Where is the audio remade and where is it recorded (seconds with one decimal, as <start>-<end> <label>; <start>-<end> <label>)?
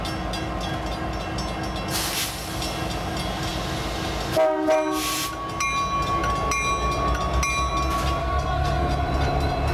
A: 0.0-8.2 recorded; 8.2-8.9 remade; 8.9-9.7 recorded